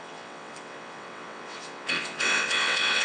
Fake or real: fake